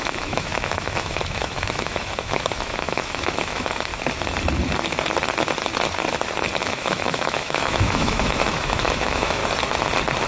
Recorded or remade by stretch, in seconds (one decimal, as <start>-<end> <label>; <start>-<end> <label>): 0.0-3.9 remade; 3.9-6.6 recorded; 6.6-9.4 remade; 9.4-10.3 recorded